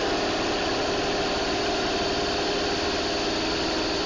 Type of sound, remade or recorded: recorded